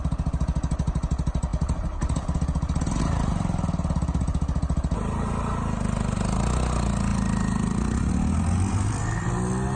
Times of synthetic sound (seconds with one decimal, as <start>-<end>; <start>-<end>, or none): none